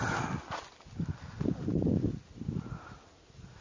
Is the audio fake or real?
real